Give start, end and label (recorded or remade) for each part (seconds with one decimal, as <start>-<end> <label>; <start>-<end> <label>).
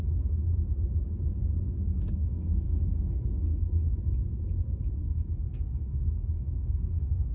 0.0-1.9 recorded; 1.9-3.8 remade; 3.8-5.0 recorded; 5.0-7.3 remade